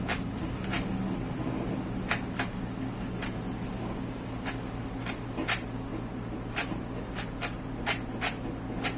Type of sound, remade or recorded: recorded